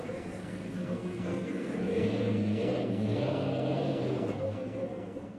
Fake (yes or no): yes